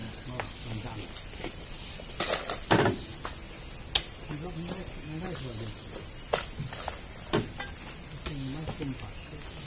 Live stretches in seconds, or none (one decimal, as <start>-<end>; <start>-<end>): 0.0-9.7